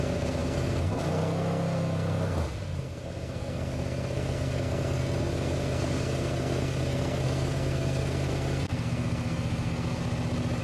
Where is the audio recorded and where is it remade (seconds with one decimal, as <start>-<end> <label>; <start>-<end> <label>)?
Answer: 0.0-10.0 remade; 10.0-10.6 recorded